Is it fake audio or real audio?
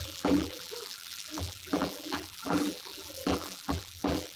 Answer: fake